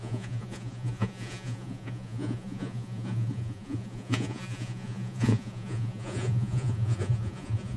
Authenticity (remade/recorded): remade